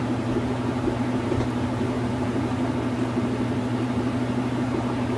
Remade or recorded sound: remade